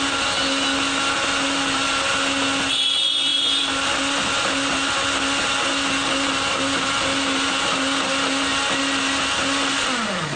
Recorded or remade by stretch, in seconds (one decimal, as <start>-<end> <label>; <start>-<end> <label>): 0.0-10.4 recorded